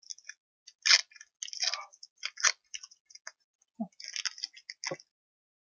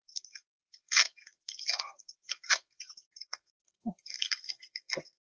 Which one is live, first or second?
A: first